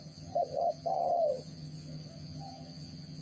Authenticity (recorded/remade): remade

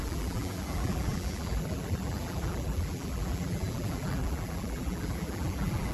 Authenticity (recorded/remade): remade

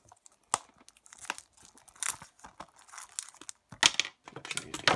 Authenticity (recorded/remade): recorded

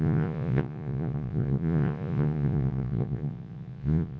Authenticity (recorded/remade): remade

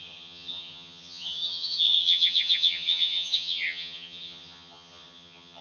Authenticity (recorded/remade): remade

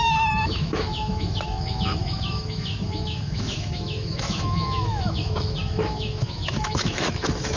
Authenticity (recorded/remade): remade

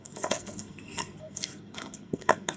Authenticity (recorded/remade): remade